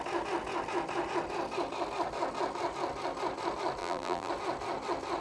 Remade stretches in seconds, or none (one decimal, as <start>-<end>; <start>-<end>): 3.8-4.3